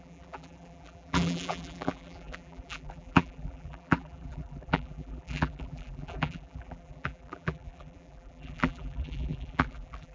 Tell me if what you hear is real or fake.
fake